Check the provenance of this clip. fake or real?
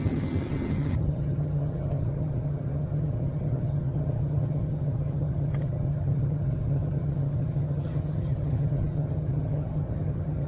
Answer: fake